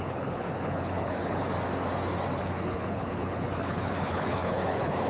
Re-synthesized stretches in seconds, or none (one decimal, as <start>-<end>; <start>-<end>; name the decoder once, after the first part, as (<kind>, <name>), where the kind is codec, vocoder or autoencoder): 0.0-1.4 (codec, HILCodec); 2.4-5.1